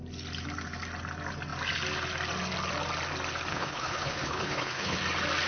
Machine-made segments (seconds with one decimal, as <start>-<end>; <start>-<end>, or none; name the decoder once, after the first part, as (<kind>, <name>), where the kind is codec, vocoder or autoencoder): 3.5-5.0 (codec, HILCodec)